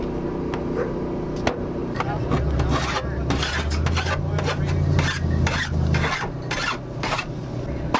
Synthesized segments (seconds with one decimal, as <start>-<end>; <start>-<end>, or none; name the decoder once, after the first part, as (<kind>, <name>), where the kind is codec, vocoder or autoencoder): none